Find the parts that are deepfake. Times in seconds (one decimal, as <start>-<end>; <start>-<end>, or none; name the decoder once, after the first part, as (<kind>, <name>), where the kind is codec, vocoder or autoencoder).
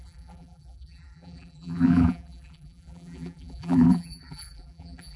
0.0-5.2 (vocoder, BigVGAN v2)